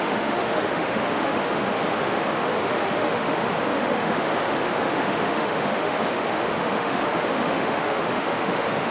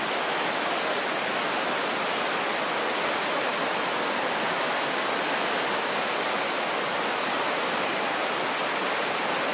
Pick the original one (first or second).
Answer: second